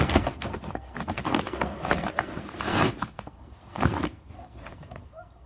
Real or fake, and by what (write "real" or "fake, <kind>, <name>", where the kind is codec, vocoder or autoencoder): fake, codec, SNAC